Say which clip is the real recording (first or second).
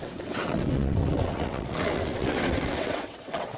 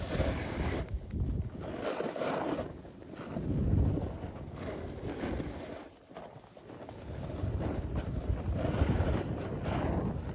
second